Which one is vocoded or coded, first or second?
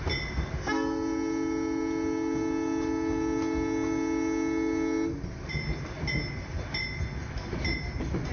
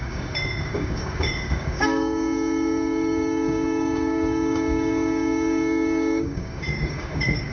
second